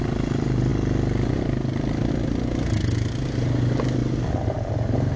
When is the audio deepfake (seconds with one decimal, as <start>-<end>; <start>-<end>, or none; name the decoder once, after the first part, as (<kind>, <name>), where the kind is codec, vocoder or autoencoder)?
none